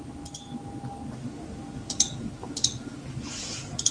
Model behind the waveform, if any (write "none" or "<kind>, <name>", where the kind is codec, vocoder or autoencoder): none